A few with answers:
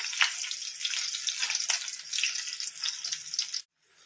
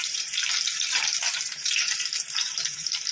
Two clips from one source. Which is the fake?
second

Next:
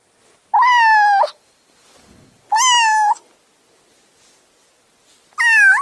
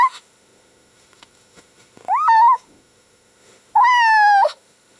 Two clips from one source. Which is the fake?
second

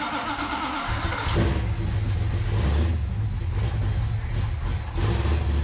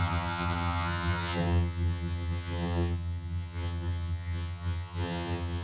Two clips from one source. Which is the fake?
second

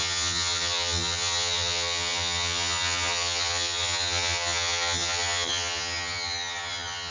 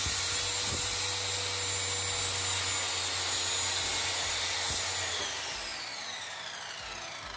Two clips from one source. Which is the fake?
first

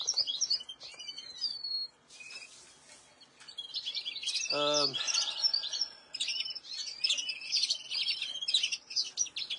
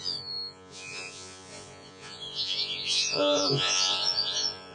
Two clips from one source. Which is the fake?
second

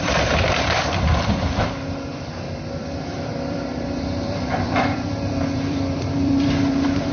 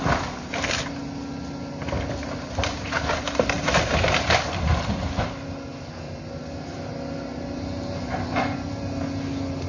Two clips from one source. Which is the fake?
first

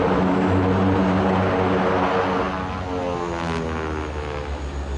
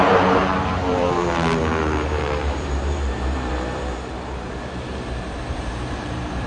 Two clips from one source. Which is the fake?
second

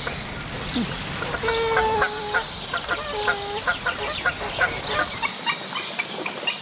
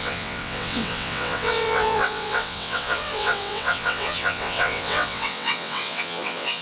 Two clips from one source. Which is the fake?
second